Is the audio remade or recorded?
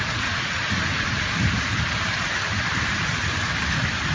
remade